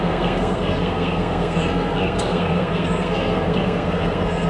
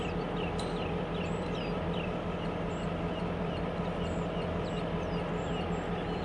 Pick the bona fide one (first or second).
second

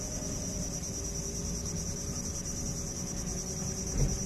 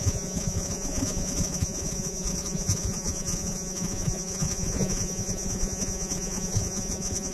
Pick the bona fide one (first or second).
first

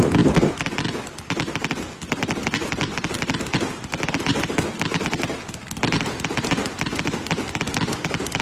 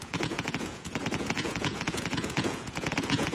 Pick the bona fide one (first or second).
first